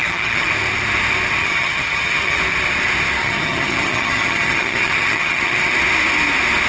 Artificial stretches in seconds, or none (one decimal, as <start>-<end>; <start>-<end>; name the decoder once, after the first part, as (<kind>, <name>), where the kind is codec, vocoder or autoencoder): 0.0-0.5 (vocoder, HiFi-GAN); 1.4-2.4; 3.2-5.7